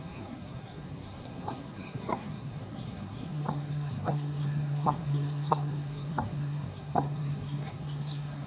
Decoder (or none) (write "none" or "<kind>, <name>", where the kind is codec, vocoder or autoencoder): codec, SNAC